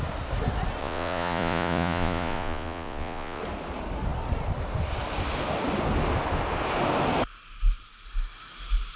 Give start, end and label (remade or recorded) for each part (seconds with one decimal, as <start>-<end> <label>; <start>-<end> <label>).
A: 0.0-0.8 recorded; 0.8-3.4 remade; 3.4-9.0 recorded